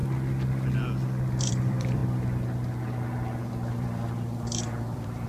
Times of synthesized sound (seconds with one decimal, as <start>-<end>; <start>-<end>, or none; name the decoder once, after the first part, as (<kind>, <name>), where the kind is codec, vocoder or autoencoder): 1.4-2.0 (vocoder, BigVGAN v2); 3.7-5.3